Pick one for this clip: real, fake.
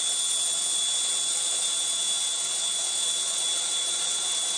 real